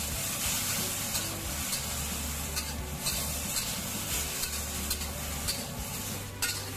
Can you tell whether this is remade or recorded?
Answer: recorded